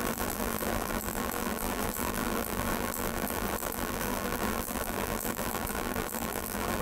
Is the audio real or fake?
fake